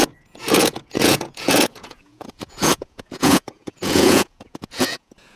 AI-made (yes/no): yes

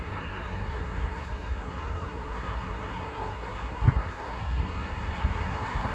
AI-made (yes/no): yes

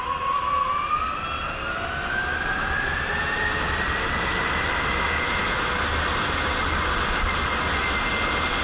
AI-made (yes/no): no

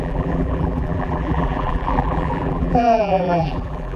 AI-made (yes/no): yes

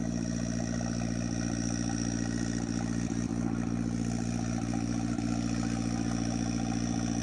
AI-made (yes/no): no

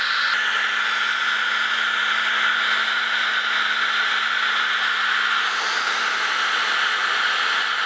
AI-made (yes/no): no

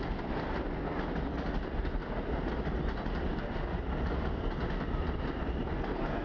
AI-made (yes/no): no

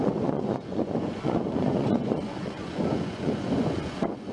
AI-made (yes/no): yes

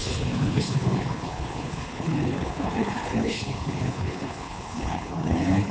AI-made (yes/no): yes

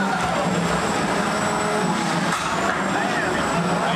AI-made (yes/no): no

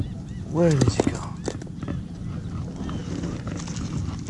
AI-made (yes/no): no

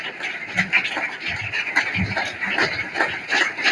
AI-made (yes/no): yes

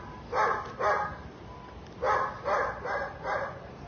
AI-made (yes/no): no